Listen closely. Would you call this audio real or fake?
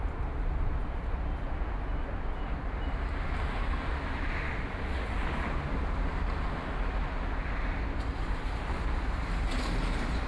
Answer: real